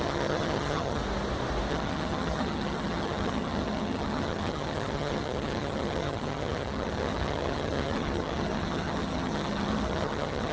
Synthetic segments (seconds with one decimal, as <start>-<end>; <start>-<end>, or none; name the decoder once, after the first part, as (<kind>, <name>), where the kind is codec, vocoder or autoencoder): 0.0-1.0 (vocoder, HiFi-GAN); 1.7-10.5